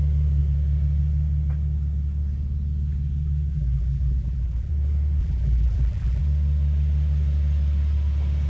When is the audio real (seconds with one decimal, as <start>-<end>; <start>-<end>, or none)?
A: 0.0-3.5; 4.7-5.2; 6.2-8.5